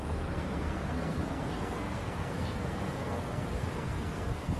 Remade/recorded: remade